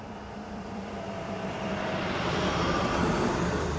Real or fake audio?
fake